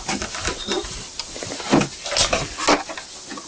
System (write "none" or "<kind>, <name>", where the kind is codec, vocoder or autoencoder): none